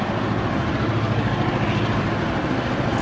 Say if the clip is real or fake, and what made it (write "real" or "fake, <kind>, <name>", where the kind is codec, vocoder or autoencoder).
real